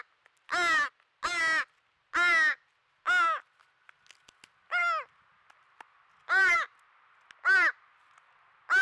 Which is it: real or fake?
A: real